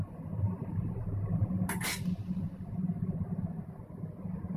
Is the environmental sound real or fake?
real